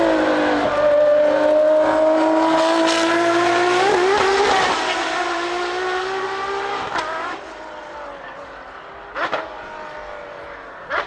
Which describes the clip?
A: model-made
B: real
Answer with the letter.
B